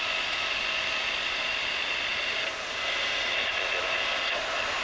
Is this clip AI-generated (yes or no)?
yes